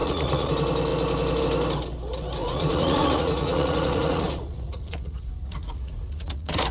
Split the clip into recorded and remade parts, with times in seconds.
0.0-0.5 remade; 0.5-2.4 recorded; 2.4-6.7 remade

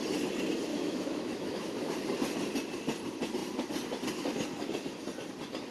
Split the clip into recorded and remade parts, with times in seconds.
0.0-0.7 recorded; 0.7-1.9 remade; 1.9-5.7 recorded

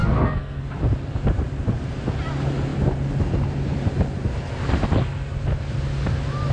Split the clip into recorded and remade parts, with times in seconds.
0.0-0.6 remade; 0.6-6.5 recorded

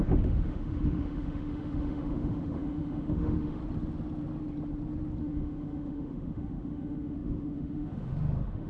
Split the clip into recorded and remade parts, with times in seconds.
0.0-3.6 remade; 3.6-5.2 recorded; 5.2-8.7 remade

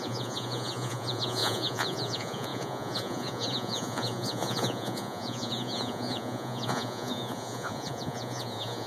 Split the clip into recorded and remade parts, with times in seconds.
0.0-8.9 remade

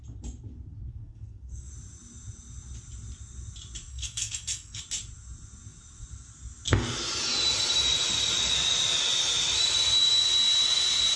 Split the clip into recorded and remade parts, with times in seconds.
0.0-0.9 recorded; 0.9-1.7 remade; 1.7-3.9 recorded; 3.9-4.8 remade; 4.8-11.2 recorded